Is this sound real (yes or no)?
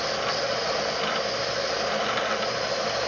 yes